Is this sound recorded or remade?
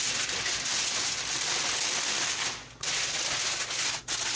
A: recorded